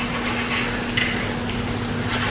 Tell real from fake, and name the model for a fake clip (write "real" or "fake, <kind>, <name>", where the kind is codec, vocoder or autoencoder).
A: real